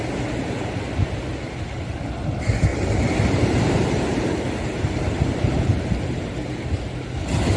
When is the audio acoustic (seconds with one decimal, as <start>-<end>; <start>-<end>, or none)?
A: 0.0-2.7; 5.8-7.6